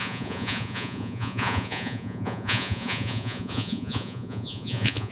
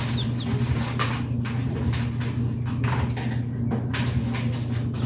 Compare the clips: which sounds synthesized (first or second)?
first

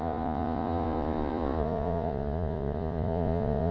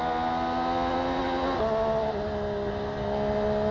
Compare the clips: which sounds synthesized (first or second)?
first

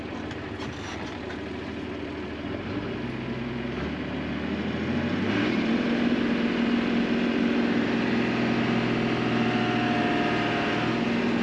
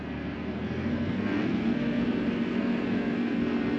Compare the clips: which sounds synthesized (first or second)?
second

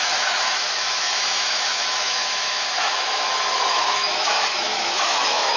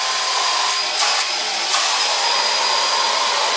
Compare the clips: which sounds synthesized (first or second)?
first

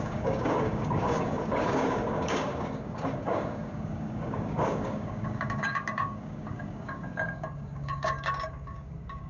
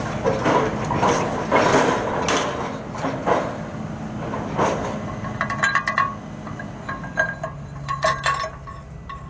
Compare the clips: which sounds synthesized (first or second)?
first